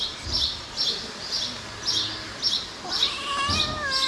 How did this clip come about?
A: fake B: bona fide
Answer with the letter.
B